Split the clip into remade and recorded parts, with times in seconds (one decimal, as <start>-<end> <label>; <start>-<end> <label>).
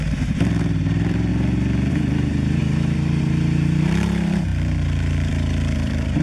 0.0-1.3 remade; 1.3-1.9 recorded; 1.9-6.2 remade